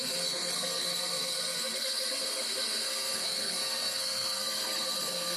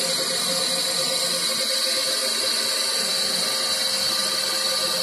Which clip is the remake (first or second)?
first